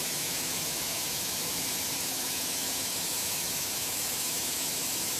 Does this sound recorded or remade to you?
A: remade